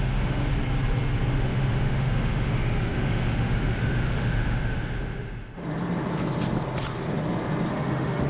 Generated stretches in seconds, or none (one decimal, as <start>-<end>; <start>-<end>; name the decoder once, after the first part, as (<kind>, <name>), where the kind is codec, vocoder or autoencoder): 0.0-0.5 (autoencoder, DAC-VAE); 1.3-5.6; 7.7-8.3

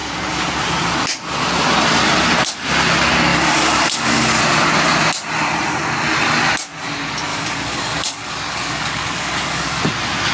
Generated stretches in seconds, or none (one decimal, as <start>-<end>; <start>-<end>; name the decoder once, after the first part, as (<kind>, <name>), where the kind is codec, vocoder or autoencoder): 3.3-4.4 (codec, DAC); 7.3-9.8

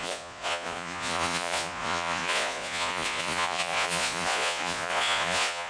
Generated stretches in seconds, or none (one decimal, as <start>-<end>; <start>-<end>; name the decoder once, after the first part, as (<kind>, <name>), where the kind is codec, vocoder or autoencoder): 0.0-5.7 (vocoder, Vocos)

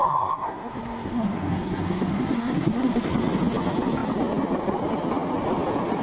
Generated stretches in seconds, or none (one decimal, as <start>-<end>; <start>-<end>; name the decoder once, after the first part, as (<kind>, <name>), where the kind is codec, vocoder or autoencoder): 0.0-3.1 (codec, SNAC)

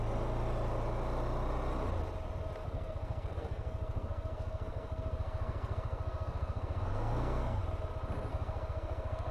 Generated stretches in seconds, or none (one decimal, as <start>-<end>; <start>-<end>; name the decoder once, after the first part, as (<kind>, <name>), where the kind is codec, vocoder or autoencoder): 2.6-7.6 (codec, SNAC); 8.3-9.3

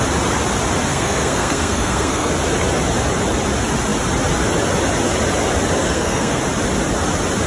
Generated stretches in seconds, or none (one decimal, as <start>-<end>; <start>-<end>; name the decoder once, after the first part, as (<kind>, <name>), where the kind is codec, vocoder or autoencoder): 0.9-2.3 (codec, SNAC); 5.8-6.4

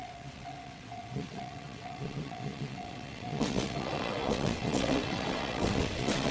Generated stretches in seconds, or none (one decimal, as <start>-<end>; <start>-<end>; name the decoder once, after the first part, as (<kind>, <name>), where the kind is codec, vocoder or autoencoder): 0.0-6.3 (vocoder, WaveNeXt)

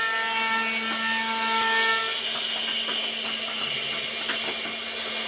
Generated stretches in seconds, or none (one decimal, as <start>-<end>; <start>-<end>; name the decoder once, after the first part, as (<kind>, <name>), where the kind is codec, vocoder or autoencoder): none